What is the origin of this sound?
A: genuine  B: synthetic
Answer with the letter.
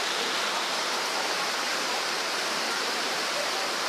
B